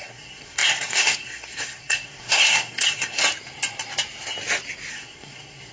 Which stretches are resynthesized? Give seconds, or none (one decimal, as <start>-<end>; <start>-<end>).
0.0-3.2; 4.9-5.7